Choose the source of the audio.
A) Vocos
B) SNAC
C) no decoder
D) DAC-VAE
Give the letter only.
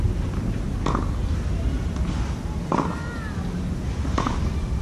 C